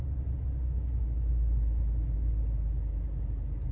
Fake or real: real